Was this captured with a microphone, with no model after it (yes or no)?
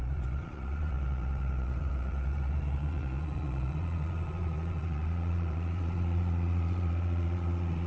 no